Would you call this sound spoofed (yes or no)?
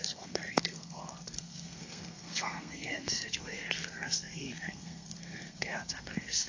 yes